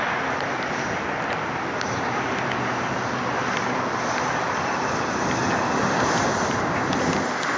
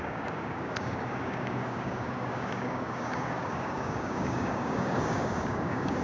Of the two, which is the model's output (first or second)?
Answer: second